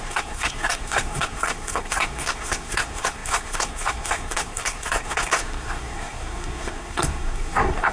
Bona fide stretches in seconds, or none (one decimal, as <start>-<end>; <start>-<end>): none